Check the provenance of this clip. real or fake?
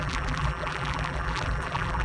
fake